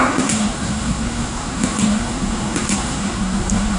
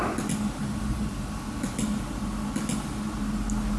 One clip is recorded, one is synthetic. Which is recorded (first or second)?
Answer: second